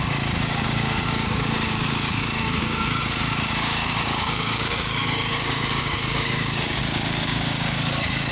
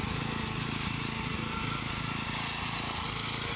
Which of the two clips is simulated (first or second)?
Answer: first